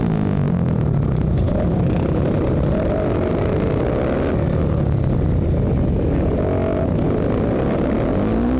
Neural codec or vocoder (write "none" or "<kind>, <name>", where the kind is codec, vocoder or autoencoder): none